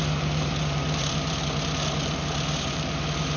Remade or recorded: remade